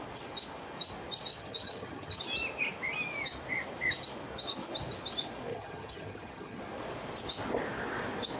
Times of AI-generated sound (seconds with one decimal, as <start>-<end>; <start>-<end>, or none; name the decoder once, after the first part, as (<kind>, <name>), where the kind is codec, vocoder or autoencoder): 1.3-2.2 (vocoder, HiFi-GAN); 5.5-6.6